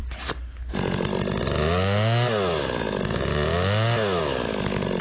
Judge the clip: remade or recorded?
recorded